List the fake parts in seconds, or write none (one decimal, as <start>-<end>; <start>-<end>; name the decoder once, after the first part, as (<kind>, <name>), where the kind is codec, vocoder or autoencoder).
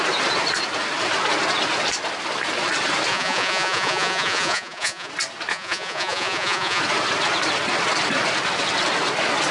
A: 3.1-5.1 (vocoder, Vocos); 5.5-6.8